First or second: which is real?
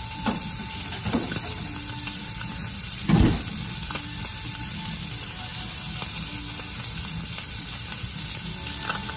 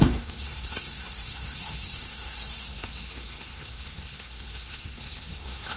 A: first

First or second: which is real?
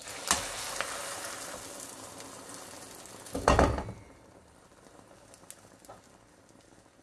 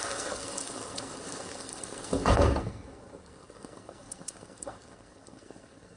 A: first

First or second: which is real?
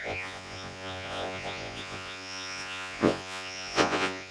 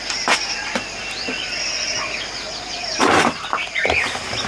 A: second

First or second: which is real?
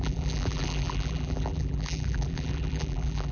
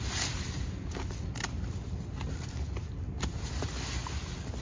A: second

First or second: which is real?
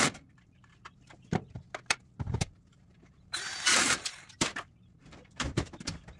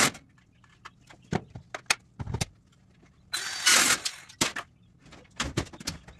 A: second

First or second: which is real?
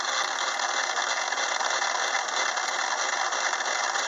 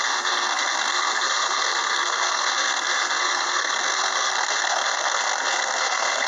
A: first